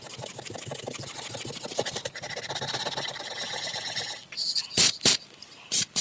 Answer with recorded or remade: recorded